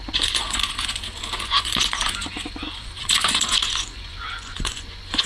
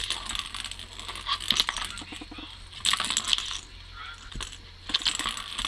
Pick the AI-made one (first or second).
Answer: first